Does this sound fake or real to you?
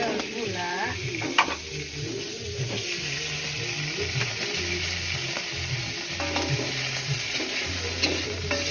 real